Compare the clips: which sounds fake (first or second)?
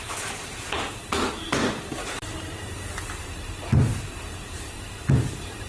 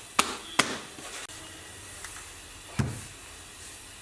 first